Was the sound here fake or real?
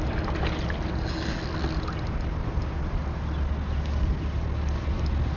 real